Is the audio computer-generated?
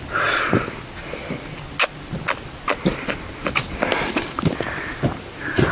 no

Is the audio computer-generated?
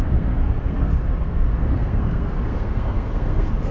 yes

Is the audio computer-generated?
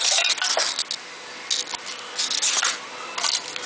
no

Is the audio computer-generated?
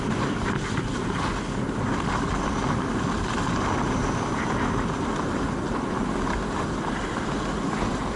no